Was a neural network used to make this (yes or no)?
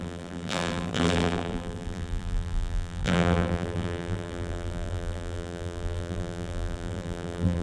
yes